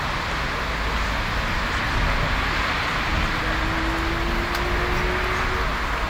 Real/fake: real